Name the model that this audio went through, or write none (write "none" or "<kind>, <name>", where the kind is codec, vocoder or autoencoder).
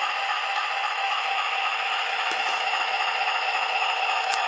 autoencoder, DAC-VAE